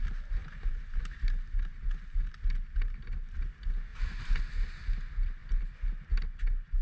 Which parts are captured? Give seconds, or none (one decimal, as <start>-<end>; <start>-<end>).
0.0-0.4; 1.0-3.9; 4.4-5.4; 5.9-6.8